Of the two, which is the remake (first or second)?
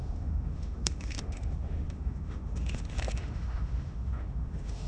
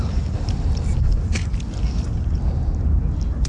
first